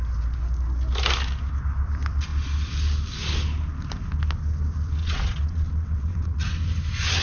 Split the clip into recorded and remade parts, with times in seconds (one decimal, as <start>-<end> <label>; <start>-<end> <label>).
0.0-5.0 recorded; 5.0-6.5 remade; 6.5-7.2 recorded